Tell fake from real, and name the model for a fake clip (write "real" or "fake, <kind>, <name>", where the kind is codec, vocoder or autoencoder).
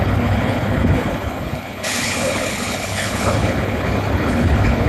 fake, codec, HILCodec